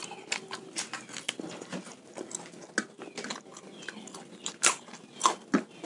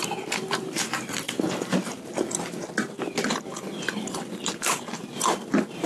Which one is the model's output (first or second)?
second